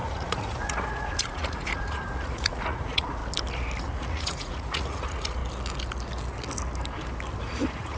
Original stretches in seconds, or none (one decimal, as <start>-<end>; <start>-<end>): 3.2-3.8; 5.4-7.4